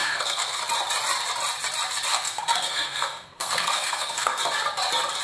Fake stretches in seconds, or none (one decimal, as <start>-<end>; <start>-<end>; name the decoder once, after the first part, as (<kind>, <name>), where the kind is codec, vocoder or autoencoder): 0.0-0.6 (codec, SNAC); 2.1-4.4